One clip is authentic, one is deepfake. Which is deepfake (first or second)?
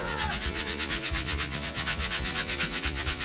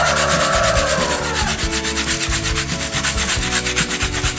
first